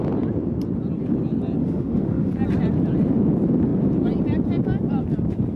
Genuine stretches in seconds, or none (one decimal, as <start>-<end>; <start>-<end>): 0.0-1.6; 2.3-5.6